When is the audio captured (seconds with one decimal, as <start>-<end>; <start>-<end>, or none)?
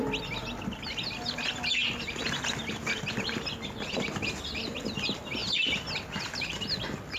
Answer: 0.0-7.2